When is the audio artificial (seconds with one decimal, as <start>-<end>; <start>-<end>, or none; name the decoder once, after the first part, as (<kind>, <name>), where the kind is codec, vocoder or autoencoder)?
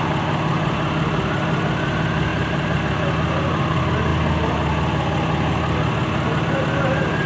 2.3-2.8 (vocoder, BigVGAN v2)